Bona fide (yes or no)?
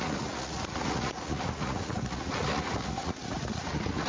no